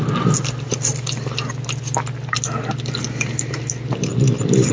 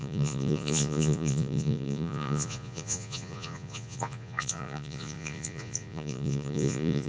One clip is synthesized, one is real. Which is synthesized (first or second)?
second